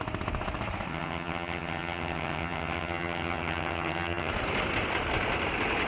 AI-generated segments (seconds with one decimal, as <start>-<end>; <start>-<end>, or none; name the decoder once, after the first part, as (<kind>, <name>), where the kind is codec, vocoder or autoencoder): 0.9-4.3 (vocoder, HiFi-GAN)